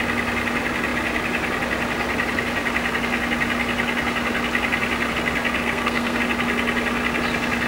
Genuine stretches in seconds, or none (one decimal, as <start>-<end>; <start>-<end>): 0.0-5.6; 6.2-7.7